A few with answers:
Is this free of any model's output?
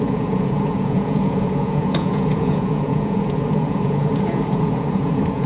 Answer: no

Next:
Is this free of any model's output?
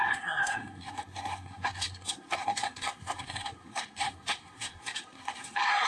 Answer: no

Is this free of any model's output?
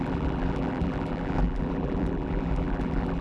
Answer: no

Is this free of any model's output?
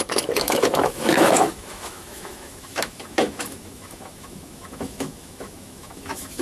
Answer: no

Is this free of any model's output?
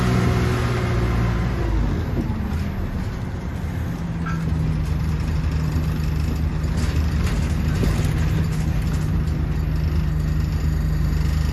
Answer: yes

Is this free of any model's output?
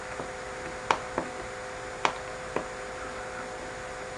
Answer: yes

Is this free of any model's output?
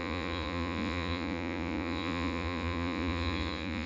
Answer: no